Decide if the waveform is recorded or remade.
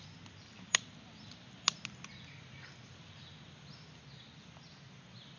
recorded